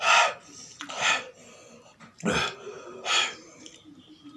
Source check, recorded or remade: recorded